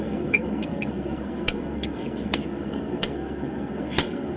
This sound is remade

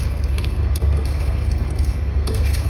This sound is remade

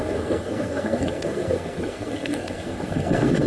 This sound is remade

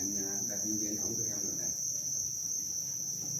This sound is recorded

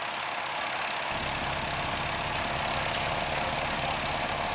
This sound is recorded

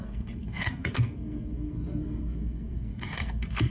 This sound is remade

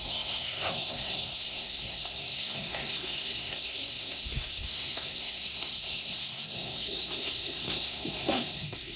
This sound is remade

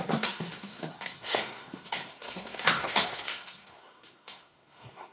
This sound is remade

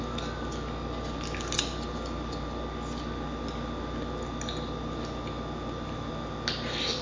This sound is recorded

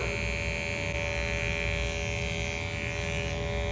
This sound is recorded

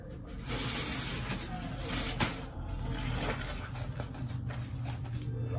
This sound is recorded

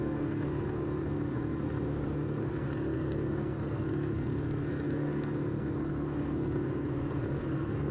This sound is remade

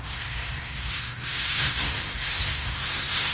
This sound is remade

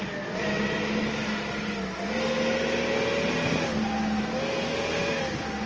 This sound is recorded